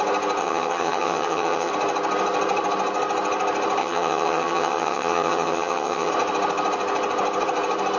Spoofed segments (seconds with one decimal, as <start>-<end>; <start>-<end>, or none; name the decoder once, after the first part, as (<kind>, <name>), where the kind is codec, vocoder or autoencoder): 0.4-1.7 (vocoder, HiFi-GAN); 3.8-6.1